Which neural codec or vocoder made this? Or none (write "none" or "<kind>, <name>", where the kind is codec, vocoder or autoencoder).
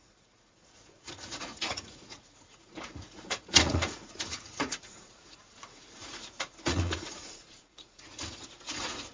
vocoder, Vocos